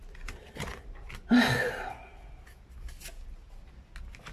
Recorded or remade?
recorded